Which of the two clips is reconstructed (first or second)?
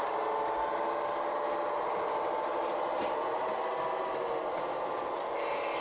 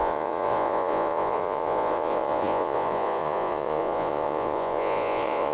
second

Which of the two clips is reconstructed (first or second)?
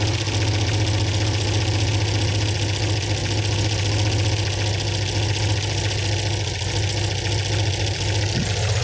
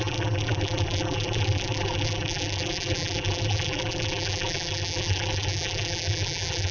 second